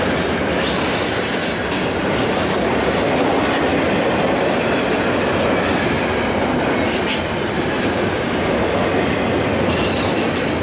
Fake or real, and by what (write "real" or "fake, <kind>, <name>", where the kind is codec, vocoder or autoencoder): real